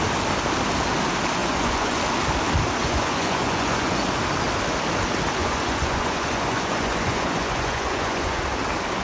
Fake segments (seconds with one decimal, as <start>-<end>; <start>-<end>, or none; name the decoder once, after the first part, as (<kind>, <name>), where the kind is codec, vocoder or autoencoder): 1.4-2.0 (vocoder, Vocos); 2.8-4.0; 5.4-8.4